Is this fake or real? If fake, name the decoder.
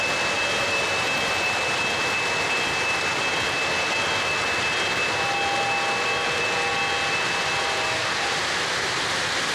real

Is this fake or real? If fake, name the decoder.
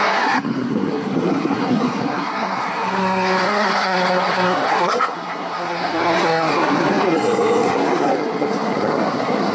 fake, codec, SNAC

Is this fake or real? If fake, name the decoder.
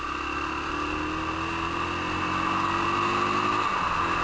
real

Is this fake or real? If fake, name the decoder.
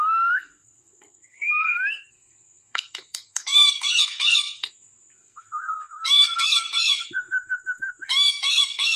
fake, codec, SNAC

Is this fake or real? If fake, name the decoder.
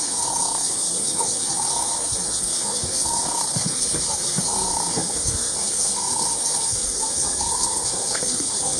fake, codec, SNAC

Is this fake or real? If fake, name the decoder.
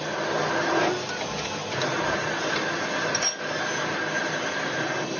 real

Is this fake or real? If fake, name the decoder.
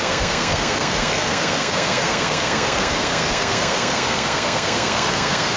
fake, codec, SNAC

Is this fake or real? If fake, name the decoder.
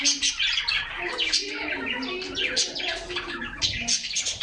real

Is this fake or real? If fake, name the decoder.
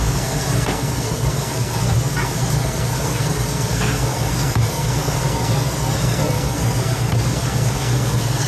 fake, codec, SNAC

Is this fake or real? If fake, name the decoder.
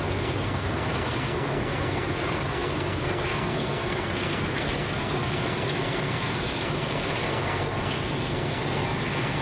fake, codec, SNAC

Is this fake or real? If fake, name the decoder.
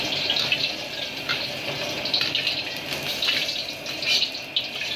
real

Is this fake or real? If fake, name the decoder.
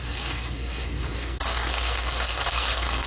fake, codec, SNAC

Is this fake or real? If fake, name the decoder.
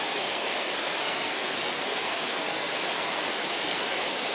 fake, codec, SNAC